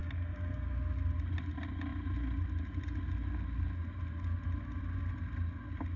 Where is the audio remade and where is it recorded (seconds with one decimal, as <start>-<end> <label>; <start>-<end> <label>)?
0.0-0.7 remade; 0.7-6.0 recorded

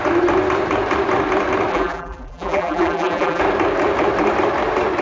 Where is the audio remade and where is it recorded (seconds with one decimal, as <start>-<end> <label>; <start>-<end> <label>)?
0.0-1.7 recorded; 1.7-3.4 remade; 3.4-5.0 recorded

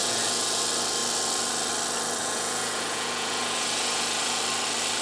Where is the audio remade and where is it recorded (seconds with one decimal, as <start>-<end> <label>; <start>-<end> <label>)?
0.0-0.6 remade; 0.6-2.2 recorded; 2.2-4.4 remade; 4.4-5.0 recorded

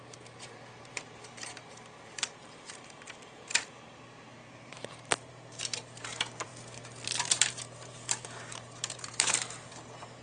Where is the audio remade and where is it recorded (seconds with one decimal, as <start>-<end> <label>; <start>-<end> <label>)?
0.0-6.5 remade; 6.5-7.3 recorded; 7.3-10.2 remade

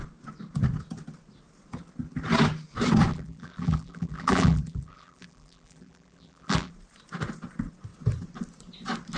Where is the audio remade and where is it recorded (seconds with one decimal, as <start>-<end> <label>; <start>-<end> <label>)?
0.0-3.1 recorded; 3.1-6.7 remade; 6.7-9.2 recorded